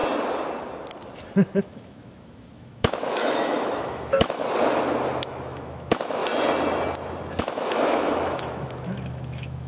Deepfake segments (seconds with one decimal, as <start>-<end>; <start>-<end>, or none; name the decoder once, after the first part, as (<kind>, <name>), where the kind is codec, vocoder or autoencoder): 1.6-4.4 (autoencoder, DAC-VAE); 5.2-6.2; 7.4-9.7